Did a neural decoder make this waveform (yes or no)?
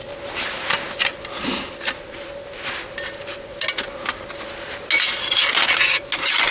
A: no